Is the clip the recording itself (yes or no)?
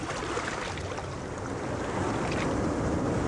yes